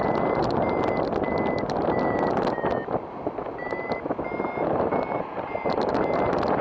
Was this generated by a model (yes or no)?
no